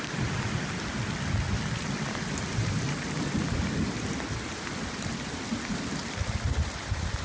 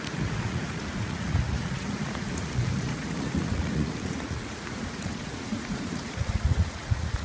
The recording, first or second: first